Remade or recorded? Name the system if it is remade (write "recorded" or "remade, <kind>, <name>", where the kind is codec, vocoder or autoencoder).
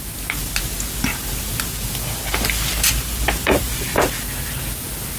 recorded